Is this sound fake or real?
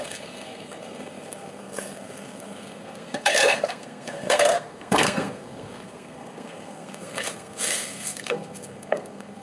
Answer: fake